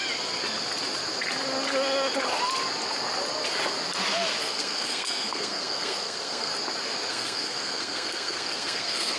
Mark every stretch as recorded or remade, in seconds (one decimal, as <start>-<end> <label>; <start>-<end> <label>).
0.0-4.4 recorded; 4.4-6.5 remade; 6.5-7.1 recorded; 7.1-9.2 remade